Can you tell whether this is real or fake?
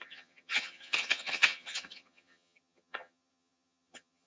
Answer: fake